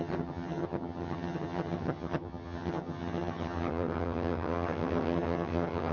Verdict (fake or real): fake